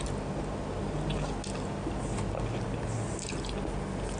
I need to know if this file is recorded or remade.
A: recorded